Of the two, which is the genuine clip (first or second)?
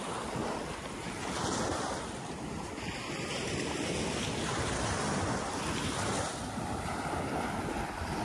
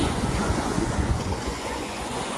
first